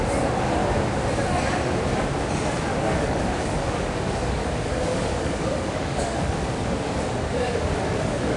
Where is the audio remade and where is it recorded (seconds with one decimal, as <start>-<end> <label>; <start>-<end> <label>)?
0.0-0.6 remade; 0.6-2.8 recorded; 2.8-8.4 remade